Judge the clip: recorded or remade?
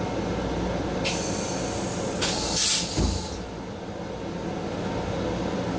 recorded